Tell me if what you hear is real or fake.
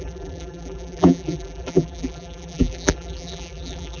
fake